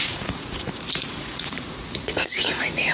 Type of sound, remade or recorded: remade